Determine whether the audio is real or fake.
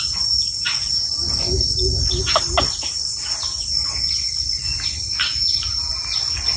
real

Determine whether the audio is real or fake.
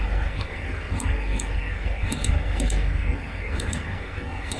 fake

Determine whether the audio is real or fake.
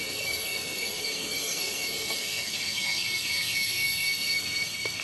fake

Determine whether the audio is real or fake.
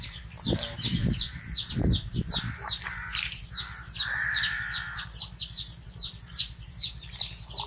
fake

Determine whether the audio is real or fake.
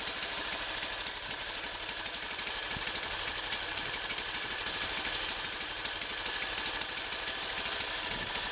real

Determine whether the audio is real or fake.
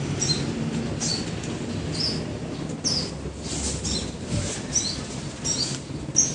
real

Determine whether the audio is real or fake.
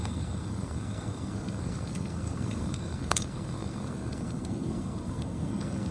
fake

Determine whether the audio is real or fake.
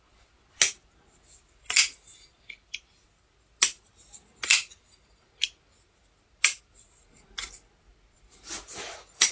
real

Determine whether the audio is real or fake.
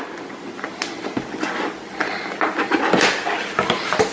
real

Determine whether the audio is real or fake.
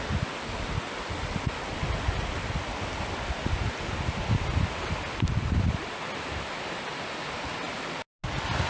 real